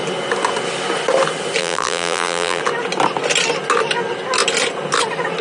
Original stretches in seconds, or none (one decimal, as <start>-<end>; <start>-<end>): 0.0-1.6; 2.6-5.4